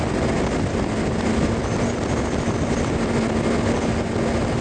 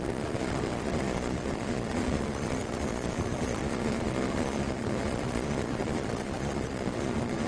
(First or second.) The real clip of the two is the first